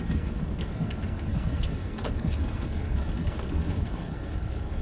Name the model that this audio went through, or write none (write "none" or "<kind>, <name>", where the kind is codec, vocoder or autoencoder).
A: codec, SNAC